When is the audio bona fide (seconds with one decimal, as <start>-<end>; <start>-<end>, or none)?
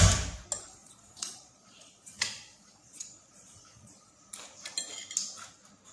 0.0-0.8; 4.1-5.9